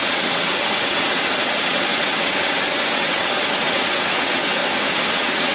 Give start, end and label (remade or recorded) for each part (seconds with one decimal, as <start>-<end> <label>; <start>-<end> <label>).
0.0-4.6 remade; 4.6-5.1 recorded; 5.1-5.5 remade